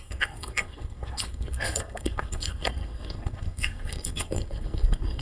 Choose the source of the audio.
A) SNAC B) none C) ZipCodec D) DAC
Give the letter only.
A